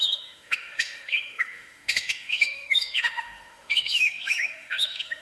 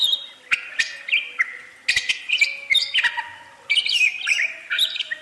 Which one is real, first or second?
second